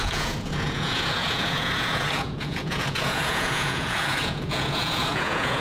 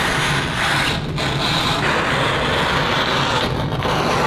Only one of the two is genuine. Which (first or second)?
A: second